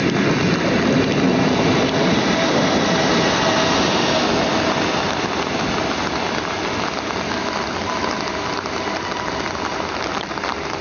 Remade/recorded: recorded